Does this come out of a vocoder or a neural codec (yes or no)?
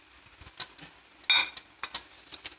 no